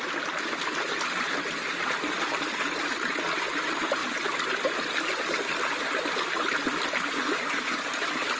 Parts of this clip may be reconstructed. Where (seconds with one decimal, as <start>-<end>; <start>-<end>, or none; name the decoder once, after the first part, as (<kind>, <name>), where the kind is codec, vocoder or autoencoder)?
none